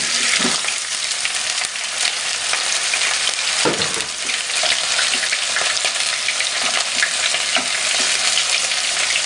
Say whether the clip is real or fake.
fake